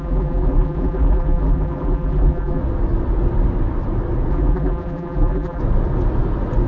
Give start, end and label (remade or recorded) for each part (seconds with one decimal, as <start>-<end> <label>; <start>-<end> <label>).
0.0-2.6 remade; 2.6-4.3 recorded; 4.3-5.6 remade; 5.6-6.7 recorded